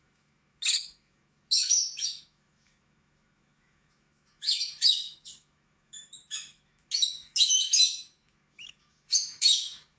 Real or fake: fake